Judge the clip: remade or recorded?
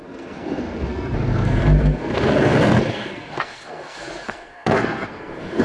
remade